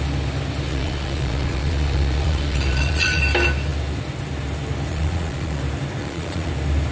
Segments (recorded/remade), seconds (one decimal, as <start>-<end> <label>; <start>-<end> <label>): 0.0-0.7 recorded; 0.7-3.2 remade; 3.2-4.9 recorded; 4.9-5.6 remade; 5.6-6.0 recorded; 6.0-6.5 remade; 6.5-6.9 recorded